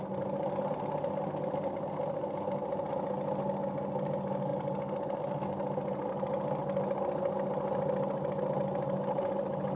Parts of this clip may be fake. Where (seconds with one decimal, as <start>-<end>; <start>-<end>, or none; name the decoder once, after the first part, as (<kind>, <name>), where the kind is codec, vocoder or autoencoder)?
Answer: none

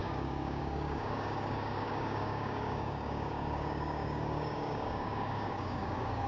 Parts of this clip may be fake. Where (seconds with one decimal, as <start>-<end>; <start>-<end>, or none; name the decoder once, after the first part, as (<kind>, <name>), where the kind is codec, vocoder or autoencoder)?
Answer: 0.0-6.3 (codec, DAC)